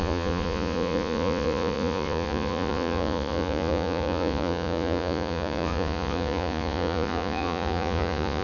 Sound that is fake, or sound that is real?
fake